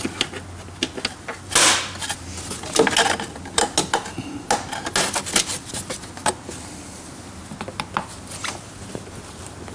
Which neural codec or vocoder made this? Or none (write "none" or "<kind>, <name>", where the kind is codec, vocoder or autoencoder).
none